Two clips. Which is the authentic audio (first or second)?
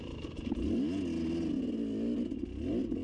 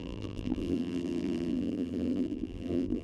first